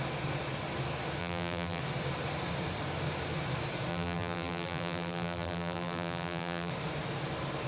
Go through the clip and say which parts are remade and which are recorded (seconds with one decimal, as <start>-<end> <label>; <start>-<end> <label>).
0.0-1.2 recorded; 1.2-1.8 remade; 1.8-3.9 recorded; 3.9-6.7 remade; 6.7-7.7 recorded